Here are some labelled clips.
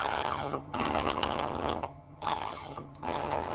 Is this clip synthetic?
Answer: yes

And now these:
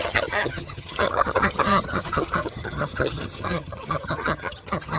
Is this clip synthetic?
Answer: yes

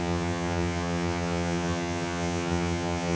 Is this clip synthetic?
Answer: yes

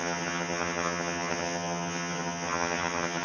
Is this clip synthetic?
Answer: yes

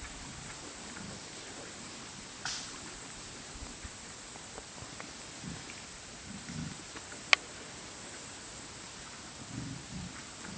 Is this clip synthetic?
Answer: no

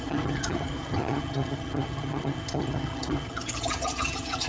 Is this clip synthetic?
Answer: yes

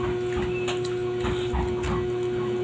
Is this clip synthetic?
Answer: no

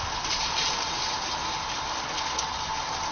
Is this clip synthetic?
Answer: no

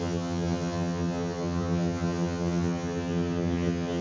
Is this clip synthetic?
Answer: yes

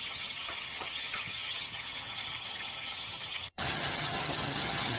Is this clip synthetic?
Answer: yes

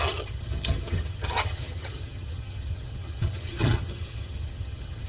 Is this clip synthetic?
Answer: yes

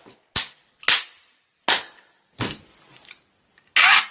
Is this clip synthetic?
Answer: no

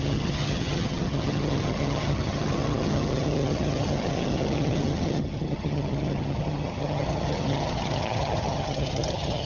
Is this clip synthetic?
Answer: yes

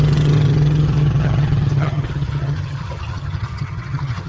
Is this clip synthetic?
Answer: yes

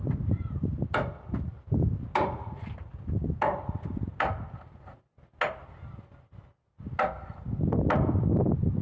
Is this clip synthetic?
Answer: no